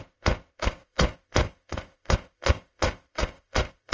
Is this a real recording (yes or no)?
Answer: no